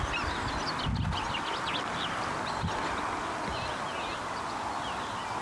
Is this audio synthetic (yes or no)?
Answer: no